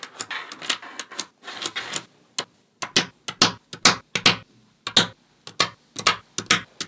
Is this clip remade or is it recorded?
recorded